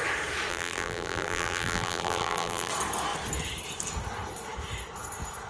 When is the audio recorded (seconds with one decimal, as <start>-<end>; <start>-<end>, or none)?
0.0-0.5; 2.7-5.5